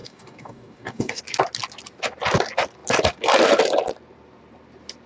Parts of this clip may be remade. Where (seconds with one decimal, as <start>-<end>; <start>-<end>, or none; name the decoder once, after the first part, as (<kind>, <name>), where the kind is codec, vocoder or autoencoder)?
0.0-1.2 (codec, DAC)